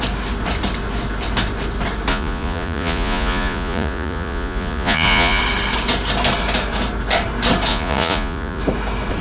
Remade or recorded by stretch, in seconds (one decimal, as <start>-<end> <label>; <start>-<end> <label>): 0.0-2.1 recorded; 2.1-5.4 remade; 5.4-7.7 recorded; 7.7-8.6 remade; 8.6-9.2 recorded